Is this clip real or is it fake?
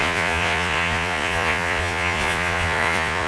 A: fake